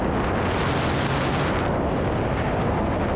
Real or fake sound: real